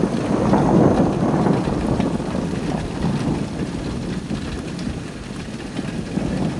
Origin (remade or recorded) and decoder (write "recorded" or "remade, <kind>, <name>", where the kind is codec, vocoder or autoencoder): recorded